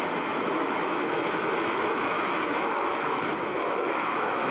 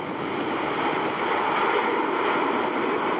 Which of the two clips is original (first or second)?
second